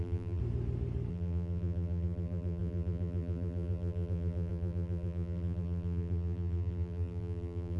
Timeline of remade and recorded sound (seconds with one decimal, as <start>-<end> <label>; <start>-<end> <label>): 0.0-0.4 remade; 0.4-1.1 recorded; 1.1-7.8 remade